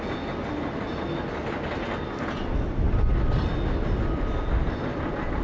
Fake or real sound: real